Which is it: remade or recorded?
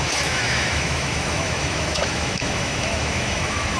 remade